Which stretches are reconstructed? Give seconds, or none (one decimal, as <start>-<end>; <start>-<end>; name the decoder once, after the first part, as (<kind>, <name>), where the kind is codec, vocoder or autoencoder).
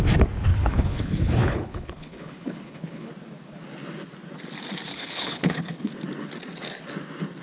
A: 0.5-3.1 (codec, HILCodec); 4.9-5.9